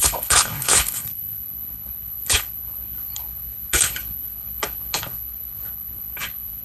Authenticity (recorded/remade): remade